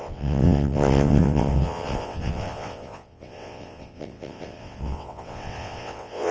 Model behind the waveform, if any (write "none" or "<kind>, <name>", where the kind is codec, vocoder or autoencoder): vocoder, WaveNeXt